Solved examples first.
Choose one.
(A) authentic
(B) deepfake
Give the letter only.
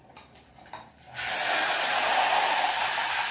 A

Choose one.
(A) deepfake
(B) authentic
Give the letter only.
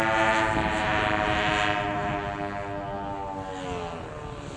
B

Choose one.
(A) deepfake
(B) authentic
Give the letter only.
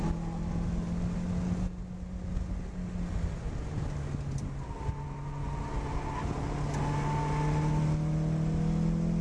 B